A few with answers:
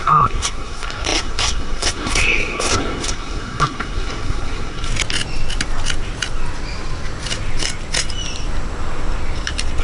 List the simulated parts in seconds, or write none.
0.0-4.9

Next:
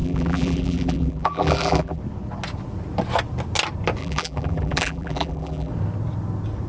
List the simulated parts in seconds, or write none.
0.0-2.0; 4.0-5.7